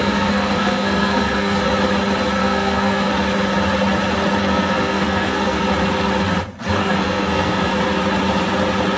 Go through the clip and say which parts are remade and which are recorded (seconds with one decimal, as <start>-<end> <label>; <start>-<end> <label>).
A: 0.0-1.6 remade; 1.6-2.4 recorded; 2.4-3.1 remade; 3.1-4.4 recorded; 4.4-5.6 remade; 5.6-6.8 recorded; 6.8-7.7 remade; 7.7-9.0 recorded